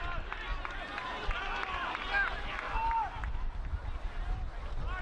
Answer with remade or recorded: recorded